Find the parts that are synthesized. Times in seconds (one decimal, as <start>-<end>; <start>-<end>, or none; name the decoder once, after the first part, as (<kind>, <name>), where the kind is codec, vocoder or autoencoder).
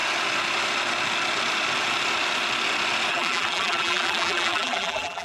3.1-5.2 (vocoder, BigVGAN v2)